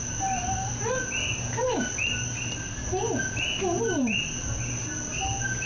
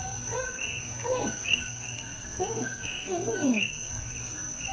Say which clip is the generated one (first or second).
second